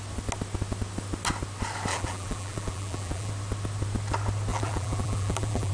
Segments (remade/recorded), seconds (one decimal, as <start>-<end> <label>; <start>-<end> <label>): 0.0-1.9 recorded; 1.9-3.3 remade; 3.3-4.5 recorded; 4.5-5.7 remade